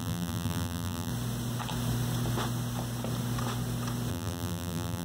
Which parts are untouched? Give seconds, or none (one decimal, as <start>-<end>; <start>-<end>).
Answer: 1.1-4.1